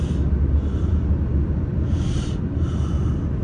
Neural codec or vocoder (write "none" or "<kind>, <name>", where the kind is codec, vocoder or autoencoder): none